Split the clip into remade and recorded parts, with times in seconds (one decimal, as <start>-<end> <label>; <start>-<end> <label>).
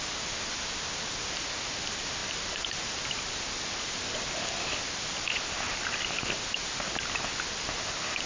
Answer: 0.0-8.3 recorded